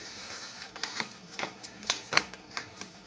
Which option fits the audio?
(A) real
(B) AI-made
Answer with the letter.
B